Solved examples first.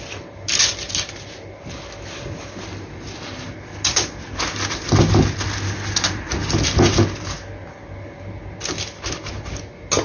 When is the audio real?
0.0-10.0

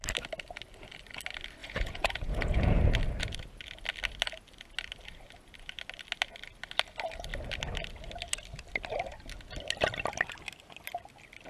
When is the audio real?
0.0-1.6; 2.8-11.5

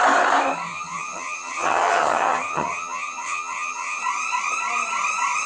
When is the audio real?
0.0-0.7; 4.0-5.5